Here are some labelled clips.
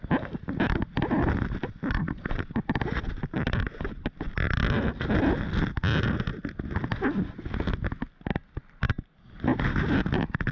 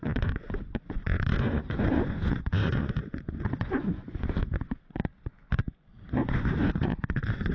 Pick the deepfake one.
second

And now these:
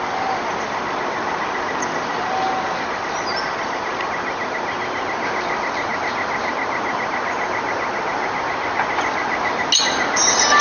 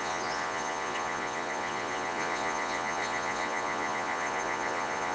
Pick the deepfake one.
second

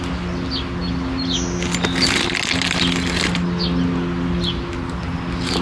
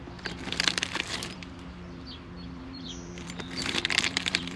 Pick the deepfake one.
second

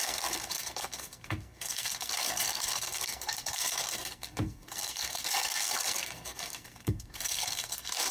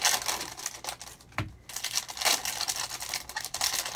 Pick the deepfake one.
first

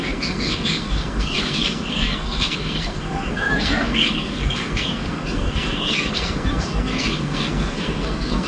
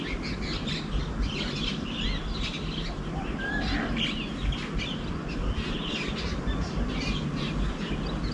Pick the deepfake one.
first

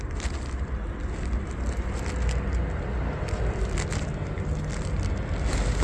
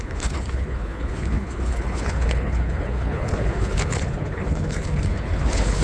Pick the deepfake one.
second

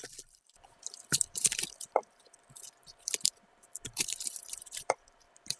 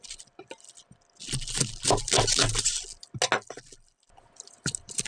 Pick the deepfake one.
first